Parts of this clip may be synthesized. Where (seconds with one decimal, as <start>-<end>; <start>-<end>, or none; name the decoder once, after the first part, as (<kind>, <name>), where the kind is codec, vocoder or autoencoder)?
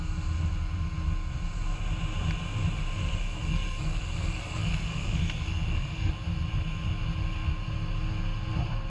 3.0-6.1 (codec, SNAC)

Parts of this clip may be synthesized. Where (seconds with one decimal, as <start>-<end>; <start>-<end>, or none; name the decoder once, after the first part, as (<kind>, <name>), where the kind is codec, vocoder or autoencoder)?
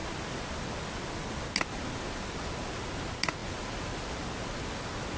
none